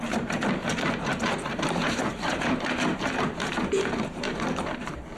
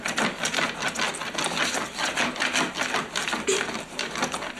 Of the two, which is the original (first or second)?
second